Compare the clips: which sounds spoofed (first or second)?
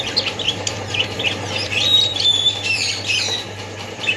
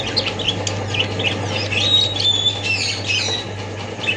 first